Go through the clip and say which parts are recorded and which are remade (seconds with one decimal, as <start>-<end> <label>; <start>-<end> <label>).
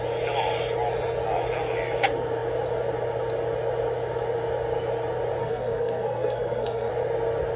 0.0-5.4 recorded; 5.4-6.9 remade; 6.9-7.6 recorded